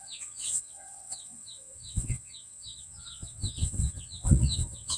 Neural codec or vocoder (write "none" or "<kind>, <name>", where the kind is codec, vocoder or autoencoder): vocoder, WaveNeXt